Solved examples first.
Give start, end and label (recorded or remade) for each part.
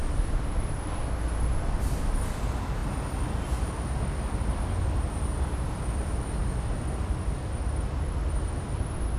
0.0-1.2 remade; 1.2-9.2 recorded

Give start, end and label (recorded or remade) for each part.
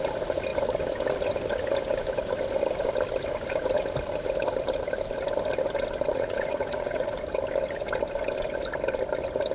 0.0-6.1 recorded; 6.1-7.2 remade; 7.2-9.5 recorded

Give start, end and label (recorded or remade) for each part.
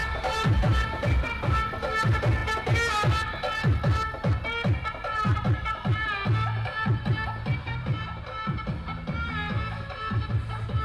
0.0-10.8 recorded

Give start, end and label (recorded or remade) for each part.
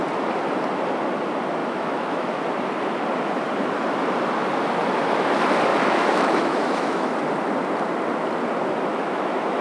0.0-1.6 recorded; 1.6-2.4 remade; 2.4-5.7 recorded; 5.7-7.2 remade; 7.2-8.9 recorded; 8.9-9.6 remade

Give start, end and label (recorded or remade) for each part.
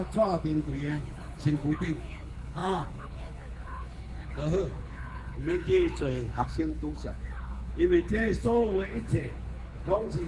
0.0-10.3 remade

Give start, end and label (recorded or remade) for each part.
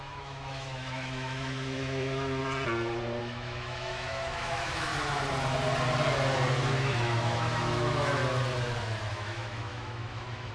0.0-2.4 remade; 2.4-3.2 recorded; 3.2-4.9 remade; 4.9-6.7 recorded; 6.7-8.2 remade; 8.2-9.1 recorded; 9.1-10.5 remade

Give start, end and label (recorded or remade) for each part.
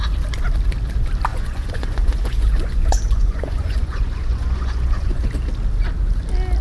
0.0-1.3 recorded; 1.3-5.3 remade; 5.3-6.6 recorded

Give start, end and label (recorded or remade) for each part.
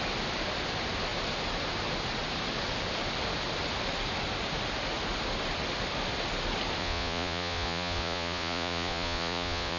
0.0-6.8 recorded; 6.8-9.8 remade